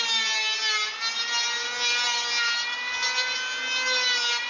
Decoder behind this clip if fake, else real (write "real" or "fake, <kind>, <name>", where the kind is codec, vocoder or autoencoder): real